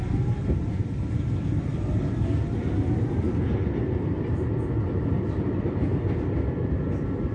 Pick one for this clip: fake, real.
real